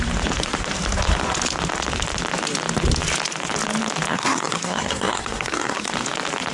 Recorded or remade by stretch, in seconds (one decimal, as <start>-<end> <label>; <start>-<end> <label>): 0.0-4.1 recorded; 4.1-5.9 remade; 5.9-6.5 recorded